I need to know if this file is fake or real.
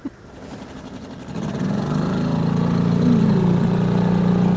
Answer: real